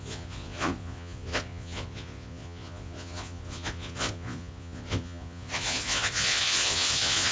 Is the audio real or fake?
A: fake